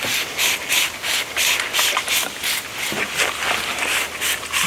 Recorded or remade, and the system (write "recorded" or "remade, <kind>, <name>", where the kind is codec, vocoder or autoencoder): recorded